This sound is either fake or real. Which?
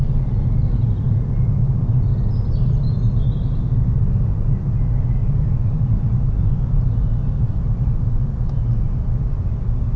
real